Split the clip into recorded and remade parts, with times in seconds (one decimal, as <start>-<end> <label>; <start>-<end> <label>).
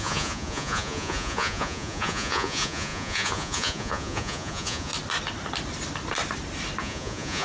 0.0-4.9 remade; 4.9-6.8 recorded; 6.8-7.4 remade